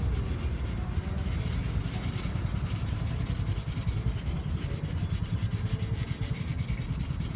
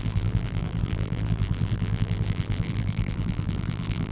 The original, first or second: first